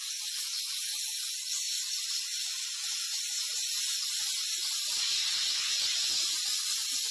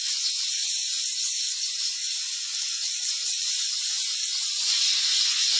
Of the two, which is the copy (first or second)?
second